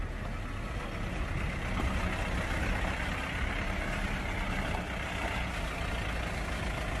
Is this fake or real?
real